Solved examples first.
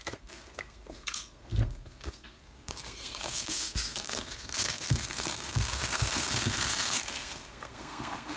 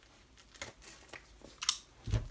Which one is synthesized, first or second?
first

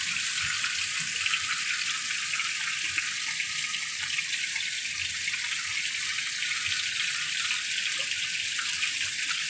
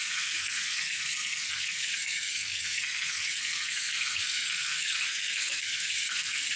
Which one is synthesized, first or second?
second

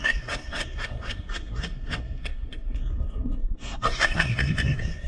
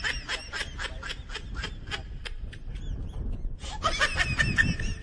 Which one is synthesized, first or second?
first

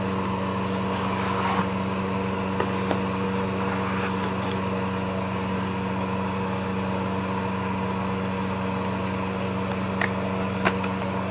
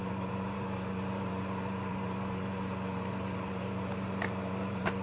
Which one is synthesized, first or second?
second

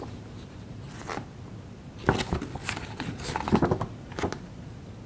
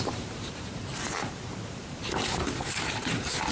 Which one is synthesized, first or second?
second